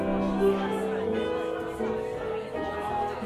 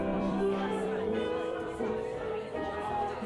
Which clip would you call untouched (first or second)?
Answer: first